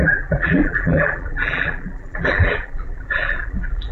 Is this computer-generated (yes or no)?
yes